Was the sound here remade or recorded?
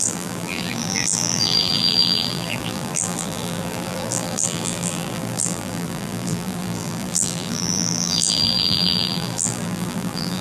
remade